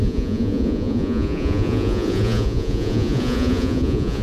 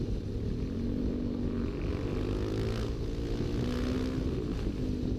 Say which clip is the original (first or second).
second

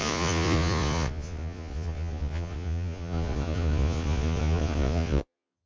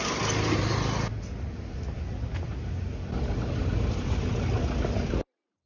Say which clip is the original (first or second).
second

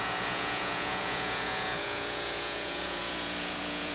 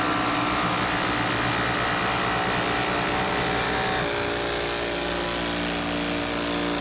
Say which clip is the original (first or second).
second